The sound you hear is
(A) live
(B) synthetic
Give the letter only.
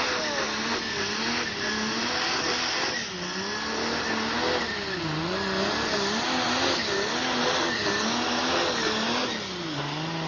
A